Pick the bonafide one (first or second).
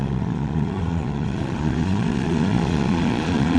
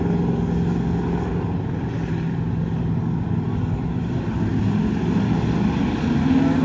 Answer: second